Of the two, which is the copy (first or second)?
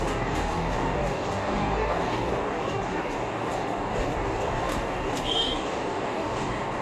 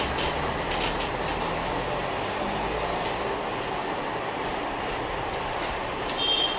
first